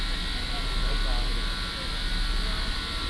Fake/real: real